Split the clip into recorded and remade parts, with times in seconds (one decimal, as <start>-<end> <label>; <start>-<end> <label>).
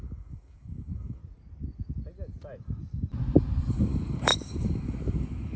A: 0.0-1.2 remade; 1.2-3.7 recorded; 3.7-5.6 remade